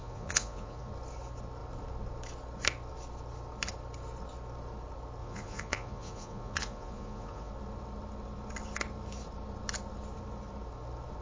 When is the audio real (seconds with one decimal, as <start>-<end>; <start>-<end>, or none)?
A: 0.9-5.2; 7.5-11.2